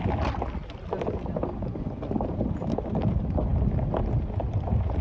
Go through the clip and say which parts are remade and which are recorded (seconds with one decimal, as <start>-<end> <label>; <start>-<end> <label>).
0.0-2.3 recorded; 2.3-2.8 remade; 2.8-5.0 recorded